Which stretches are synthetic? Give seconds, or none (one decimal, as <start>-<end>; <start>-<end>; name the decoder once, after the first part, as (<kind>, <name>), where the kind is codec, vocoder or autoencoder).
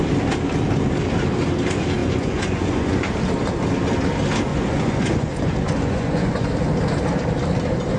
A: 2.0-3.0 (vocoder, Vocos); 4.5-6.5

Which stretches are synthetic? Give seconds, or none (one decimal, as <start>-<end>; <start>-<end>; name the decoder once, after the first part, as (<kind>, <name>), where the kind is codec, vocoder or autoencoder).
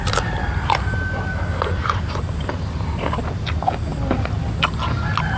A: 0.0-3.2 (vocoder, BigVGAN v2); 3.9-4.7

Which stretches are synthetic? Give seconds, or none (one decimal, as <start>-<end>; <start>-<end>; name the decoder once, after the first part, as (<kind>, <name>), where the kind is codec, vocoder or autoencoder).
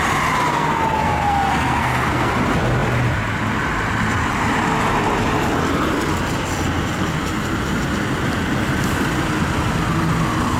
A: 0.5-2.3 (codec, SNAC)